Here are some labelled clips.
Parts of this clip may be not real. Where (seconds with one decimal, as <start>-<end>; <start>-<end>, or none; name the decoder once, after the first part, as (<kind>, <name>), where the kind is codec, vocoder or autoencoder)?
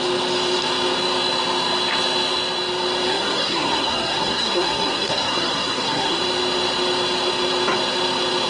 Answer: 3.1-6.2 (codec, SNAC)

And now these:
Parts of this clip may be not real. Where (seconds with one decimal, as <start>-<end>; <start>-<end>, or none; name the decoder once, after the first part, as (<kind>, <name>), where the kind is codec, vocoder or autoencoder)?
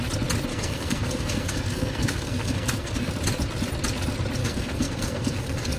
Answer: 0.5-3.1 (codec, SNAC); 4.4-5.8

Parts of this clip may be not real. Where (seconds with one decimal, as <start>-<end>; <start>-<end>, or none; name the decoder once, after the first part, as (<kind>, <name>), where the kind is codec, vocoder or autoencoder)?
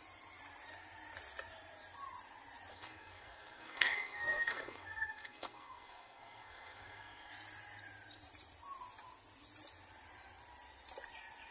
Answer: 2.7-7.3 (codec, SNAC)